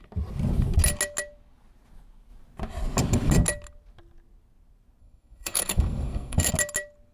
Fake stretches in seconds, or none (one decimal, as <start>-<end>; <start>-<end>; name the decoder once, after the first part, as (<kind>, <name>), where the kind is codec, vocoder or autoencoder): 5.0-6.5 (codec, SNAC)